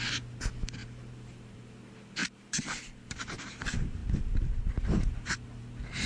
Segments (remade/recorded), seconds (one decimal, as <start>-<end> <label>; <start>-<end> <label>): 0.0-0.8 recorded; 0.8-1.6 remade; 1.6-2.2 recorded; 2.2-3.5 remade; 3.5-6.1 recorded